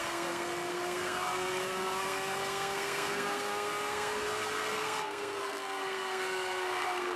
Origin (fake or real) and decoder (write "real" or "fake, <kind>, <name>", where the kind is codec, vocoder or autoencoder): fake, codec, SNAC